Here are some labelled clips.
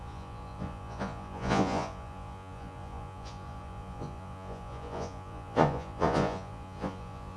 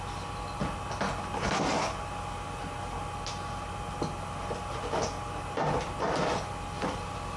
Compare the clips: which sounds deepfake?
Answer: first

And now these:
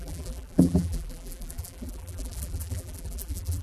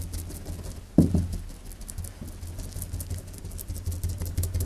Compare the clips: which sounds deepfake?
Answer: first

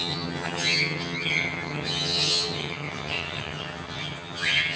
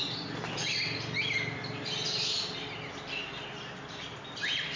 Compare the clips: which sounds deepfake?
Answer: first